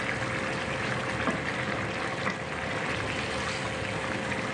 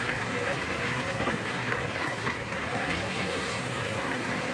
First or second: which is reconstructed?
second